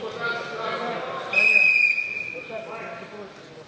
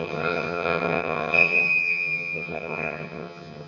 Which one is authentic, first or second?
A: first